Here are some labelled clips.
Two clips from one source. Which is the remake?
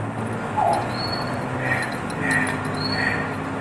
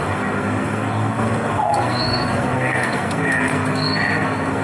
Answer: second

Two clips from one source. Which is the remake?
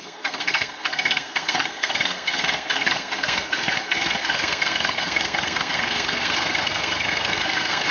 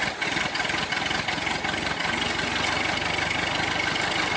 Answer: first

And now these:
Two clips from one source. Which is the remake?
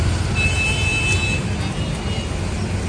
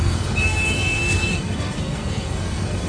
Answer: second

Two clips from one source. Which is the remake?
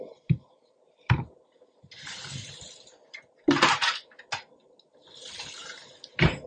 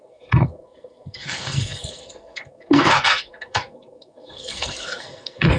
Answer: second